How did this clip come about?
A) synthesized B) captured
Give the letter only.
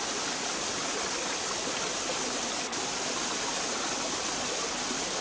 B